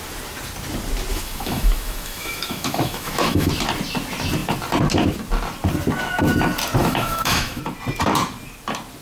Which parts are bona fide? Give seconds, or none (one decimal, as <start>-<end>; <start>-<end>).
0.0-1.1; 3.5-6.8; 7.6-9.0